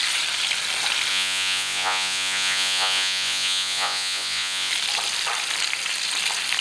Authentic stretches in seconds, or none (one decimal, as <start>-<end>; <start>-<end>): 0.0-1.1; 4.7-6.6